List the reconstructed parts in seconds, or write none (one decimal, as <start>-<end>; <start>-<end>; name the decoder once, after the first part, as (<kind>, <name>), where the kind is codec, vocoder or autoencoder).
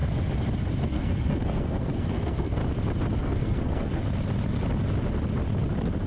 0.8-2.6 (codec, SNAC); 3.2-4.0